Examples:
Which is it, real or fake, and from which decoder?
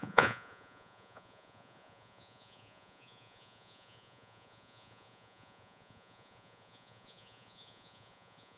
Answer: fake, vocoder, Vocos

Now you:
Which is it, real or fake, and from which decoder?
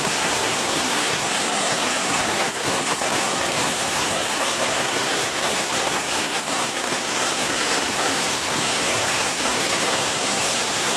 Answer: fake, codec, SNAC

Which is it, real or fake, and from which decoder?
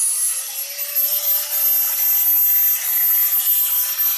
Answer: real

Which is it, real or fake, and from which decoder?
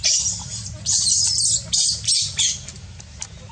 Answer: real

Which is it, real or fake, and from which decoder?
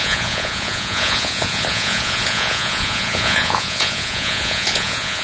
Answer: fake, vocoder, Vocos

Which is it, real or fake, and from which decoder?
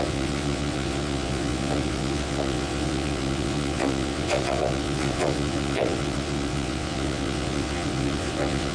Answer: fake, vocoder, WaveNeXt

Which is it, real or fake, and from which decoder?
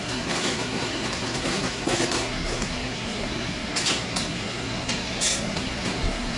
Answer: fake, codec, SNAC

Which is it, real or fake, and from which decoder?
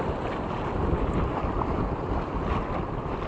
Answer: real